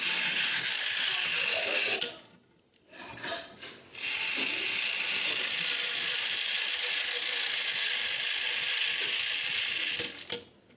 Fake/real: real